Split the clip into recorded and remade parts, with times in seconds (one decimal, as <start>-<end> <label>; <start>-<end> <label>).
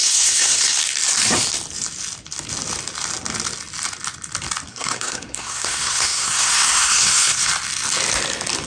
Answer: 0.0-0.8 remade; 0.8-4.7 recorded; 4.7-7.5 remade; 7.5-8.7 recorded